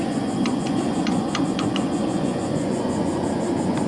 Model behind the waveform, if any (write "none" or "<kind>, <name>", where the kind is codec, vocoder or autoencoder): vocoder, Vocos